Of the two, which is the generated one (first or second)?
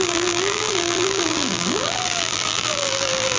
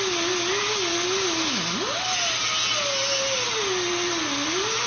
first